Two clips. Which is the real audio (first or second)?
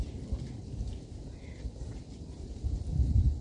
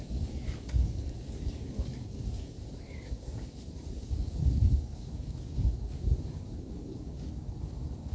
first